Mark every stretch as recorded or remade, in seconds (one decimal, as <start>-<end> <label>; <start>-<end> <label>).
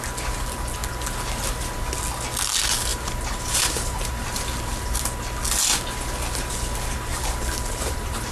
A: 0.0-2.9 recorded; 2.9-4.4 remade; 4.4-7.1 recorded; 7.1-8.3 remade